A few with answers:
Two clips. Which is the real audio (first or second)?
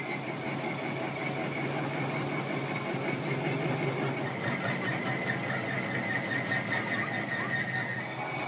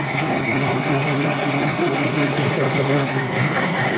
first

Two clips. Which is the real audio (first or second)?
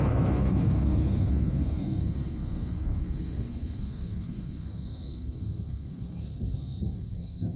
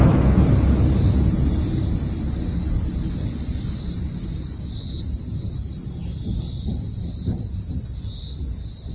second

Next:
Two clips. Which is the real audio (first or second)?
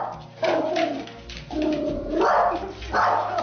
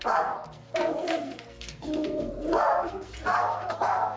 first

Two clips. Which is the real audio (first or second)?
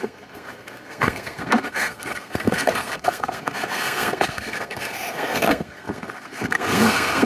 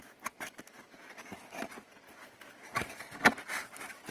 second